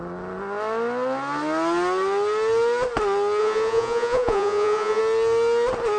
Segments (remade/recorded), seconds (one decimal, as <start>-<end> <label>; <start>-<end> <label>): 0.0-3.4 recorded; 3.4-5.0 remade; 5.0-6.0 recorded